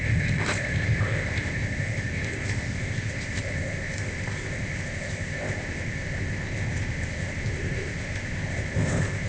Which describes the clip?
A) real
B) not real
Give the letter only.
B